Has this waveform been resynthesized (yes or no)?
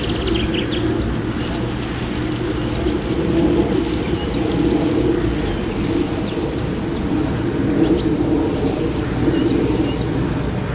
no